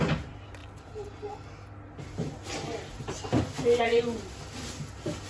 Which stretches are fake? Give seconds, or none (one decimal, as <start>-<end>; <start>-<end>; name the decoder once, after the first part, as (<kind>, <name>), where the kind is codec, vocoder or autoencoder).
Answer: none